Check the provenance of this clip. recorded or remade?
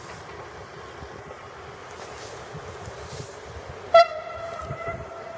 recorded